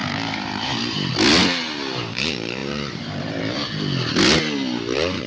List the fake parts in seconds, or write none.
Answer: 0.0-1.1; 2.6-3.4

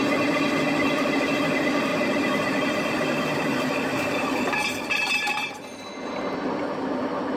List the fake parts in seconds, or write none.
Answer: 1.9-5.5